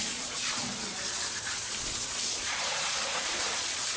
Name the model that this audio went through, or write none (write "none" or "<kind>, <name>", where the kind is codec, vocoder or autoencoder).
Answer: vocoder, Vocos